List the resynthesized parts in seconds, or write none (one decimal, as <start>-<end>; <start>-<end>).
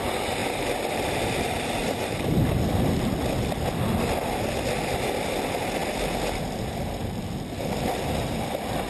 none